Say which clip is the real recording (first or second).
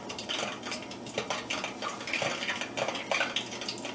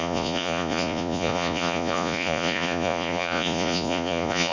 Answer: first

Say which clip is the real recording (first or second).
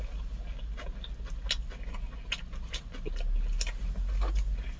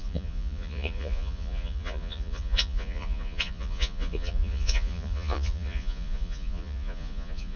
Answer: first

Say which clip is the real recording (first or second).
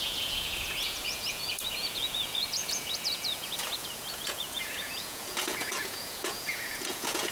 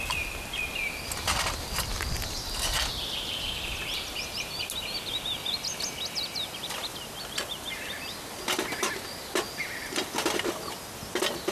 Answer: second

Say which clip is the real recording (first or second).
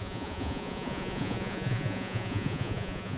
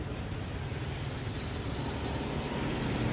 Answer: second